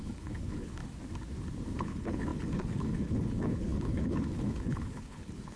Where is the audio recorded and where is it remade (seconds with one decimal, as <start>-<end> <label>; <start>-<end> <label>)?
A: 0.0-0.8 remade; 0.8-1.8 recorded; 1.8-5.6 remade

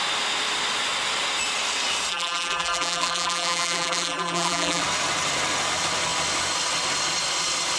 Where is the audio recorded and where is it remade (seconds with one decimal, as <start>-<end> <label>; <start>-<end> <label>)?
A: 0.0-2.1 recorded; 2.1-4.8 remade; 4.8-7.8 recorded

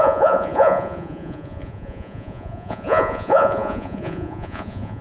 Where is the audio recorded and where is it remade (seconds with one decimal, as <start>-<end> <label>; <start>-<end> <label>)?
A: 0.0-5.0 remade